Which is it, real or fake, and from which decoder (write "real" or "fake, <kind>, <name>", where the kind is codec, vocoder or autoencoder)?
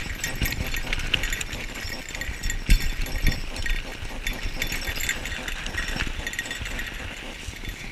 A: real